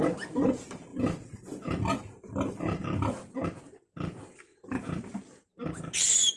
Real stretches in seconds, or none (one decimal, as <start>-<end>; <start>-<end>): 0.0-6.4